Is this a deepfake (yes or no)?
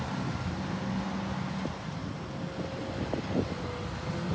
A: no